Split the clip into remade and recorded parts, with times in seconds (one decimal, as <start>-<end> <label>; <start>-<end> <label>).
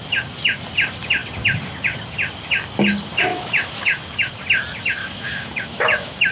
0.0-3.3 recorded; 3.3-4.3 remade; 4.3-5.0 recorded; 5.0-6.3 remade